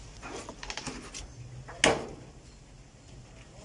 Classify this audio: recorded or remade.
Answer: recorded